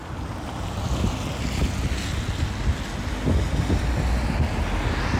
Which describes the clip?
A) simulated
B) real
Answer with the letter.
B